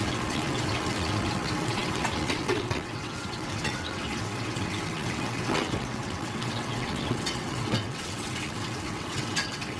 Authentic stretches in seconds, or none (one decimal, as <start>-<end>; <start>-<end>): none